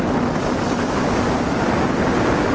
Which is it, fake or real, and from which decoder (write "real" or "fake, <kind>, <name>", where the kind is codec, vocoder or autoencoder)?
real